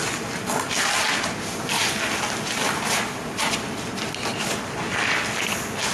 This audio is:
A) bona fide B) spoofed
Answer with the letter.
A